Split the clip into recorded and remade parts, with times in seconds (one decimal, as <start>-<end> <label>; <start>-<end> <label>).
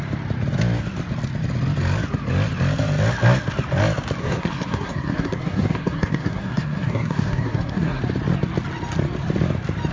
0.0-4.2 recorded; 4.2-8.0 remade; 8.0-9.9 recorded